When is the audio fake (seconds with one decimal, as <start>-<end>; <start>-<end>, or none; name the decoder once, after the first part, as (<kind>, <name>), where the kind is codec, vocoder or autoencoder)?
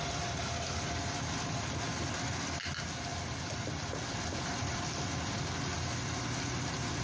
3.1-7.0 (vocoder, BigVGAN v2)